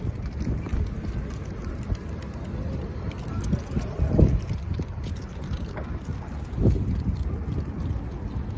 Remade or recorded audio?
recorded